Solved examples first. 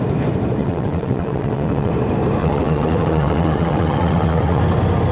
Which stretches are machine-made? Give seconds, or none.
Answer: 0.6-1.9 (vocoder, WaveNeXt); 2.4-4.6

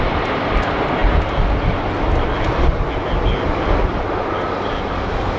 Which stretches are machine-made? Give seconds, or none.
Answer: none

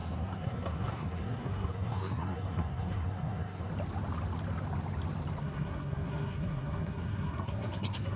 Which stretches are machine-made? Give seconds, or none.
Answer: 0.0-3.7 (codec, SNAC); 5.4-8.2

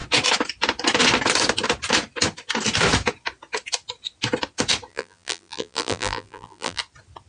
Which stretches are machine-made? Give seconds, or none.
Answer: 4.9-6.8 (vocoder, BigVGAN v2)

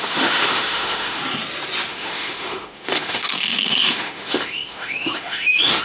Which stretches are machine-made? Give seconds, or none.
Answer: 0.0-1.2 (autoencoder, DAC-VAE); 1.9-5.8

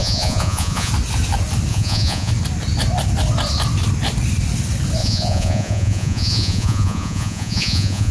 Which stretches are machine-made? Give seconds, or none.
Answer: 0.0-0.9 (vocoder, Vocos); 1.7-2.3; 5.0-8.1